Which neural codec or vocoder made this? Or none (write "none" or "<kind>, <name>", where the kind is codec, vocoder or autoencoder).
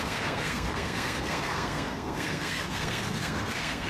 codec, SNAC